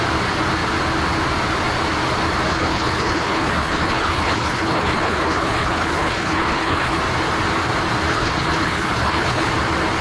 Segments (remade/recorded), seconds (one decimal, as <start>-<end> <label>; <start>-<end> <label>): 0.0-2.5 recorded; 2.5-7.0 remade; 7.0-8.1 recorded; 8.1-9.5 remade; 9.5-10.0 recorded